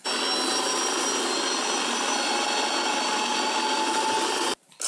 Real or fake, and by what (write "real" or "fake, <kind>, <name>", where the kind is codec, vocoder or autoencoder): real